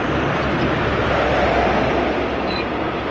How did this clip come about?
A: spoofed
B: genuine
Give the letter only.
A